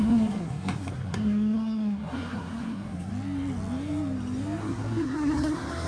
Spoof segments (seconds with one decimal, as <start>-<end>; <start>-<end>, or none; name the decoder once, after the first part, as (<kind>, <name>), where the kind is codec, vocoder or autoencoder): 0.0-3.1 (codec, SNAC); 4.6-5.9